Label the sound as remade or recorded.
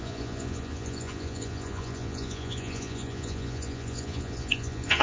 remade